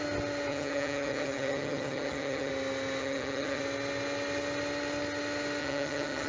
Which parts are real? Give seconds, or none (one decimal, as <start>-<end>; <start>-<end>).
0.0-0.5; 2.5-3.0; 3.6-5.6